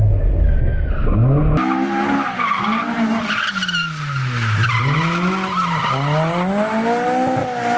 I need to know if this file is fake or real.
real